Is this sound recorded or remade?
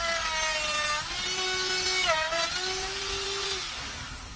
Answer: recorded